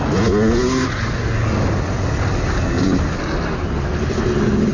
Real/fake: real